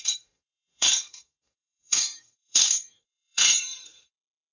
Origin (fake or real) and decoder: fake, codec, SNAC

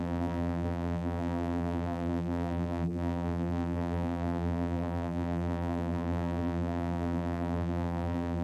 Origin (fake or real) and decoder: fake, vocoder, BigVGAN v2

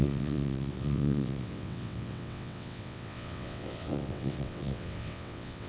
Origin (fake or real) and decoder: fake, vocoder, WaveNeXt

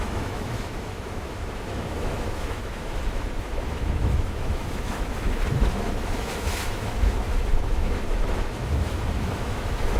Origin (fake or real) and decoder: fake, autoencoder, DAC-VAE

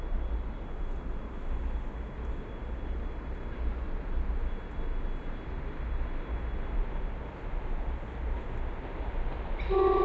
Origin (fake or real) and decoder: real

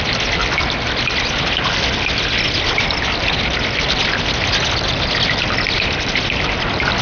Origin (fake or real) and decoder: real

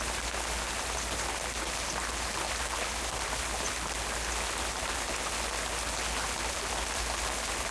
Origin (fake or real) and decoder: real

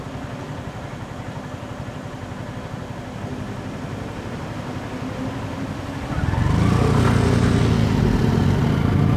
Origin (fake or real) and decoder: real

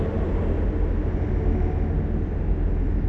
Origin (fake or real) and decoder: real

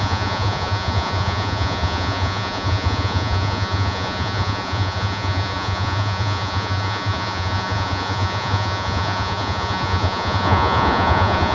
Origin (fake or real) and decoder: fake, vocoder, Vocos